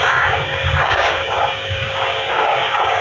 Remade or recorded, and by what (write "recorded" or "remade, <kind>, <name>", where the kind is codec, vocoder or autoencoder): remade, codec, DAC